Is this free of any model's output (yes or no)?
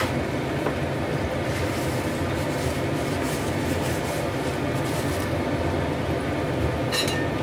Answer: yes